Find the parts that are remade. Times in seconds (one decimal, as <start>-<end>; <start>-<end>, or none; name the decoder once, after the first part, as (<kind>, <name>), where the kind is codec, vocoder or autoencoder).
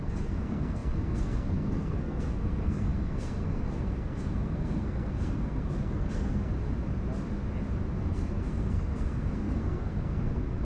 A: 0.0-6.5 (codec, SNAC); 8.0-10.6